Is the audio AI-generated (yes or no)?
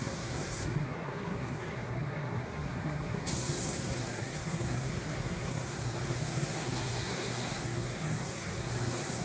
yes